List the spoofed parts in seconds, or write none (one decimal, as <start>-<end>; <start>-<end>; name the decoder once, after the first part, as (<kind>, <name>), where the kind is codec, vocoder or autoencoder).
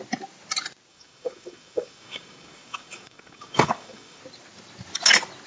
0.9-4.2 (codec, DAC)